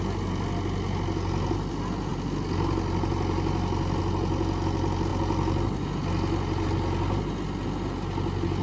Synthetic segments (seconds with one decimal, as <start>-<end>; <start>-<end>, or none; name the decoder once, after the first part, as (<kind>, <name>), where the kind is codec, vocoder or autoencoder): none